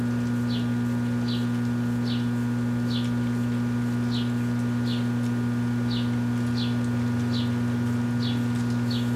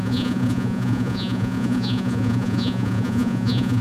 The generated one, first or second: second